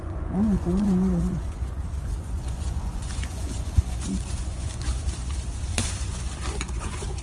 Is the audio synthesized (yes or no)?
yes